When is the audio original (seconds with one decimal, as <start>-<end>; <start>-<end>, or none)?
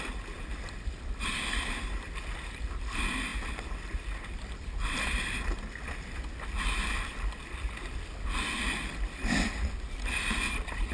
0.0-10.9